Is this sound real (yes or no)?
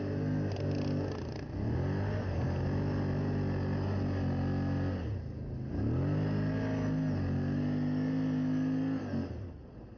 yes